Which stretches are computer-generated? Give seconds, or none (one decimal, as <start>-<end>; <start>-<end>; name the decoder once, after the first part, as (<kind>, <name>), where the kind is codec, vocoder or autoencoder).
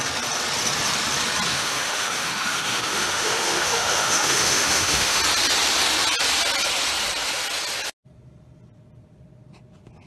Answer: 1.5-5.2 (autoencoder, DAC-VAE)